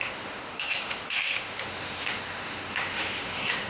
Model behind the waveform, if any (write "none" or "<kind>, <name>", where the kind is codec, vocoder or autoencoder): autoencoder, DAC-VAE